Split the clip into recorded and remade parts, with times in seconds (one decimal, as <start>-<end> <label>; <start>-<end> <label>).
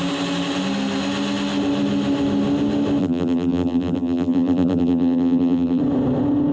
0.0-3.0 recorded; 3.0-5.8 remade; 5.8-6.5 recorded